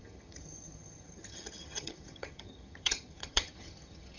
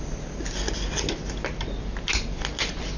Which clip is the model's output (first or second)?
first